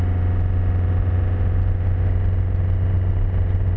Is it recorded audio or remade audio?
recorded